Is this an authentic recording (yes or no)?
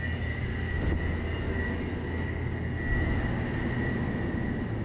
yes